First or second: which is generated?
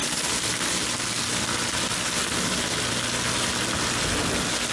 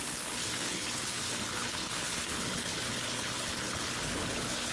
second